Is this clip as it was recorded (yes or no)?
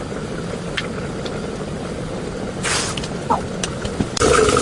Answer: no